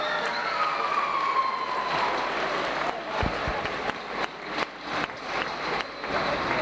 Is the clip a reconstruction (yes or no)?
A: no